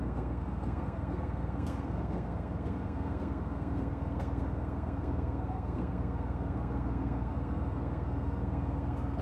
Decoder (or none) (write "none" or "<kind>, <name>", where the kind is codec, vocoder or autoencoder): codec, SNAC